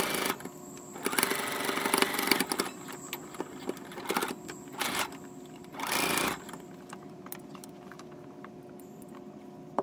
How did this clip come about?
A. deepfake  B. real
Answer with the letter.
B